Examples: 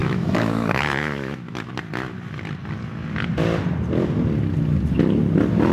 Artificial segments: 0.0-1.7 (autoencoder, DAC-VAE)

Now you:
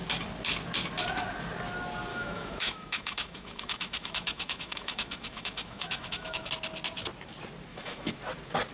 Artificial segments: 2.1-6.5 (autoencoder, DAC-VAE); 7.7-8.2

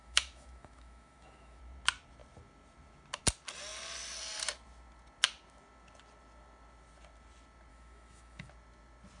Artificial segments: 0.0-1.6 (autoencoder, DAC-VAE); 7.7-8.5

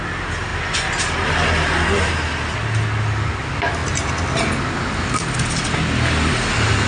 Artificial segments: none

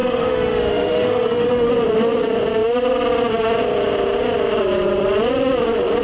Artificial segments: 0.0-1.7 (autoencoder, DAC-VAE)

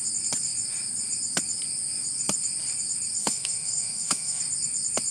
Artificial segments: 3.2-4.4 (autoencoder, DAC-VAE)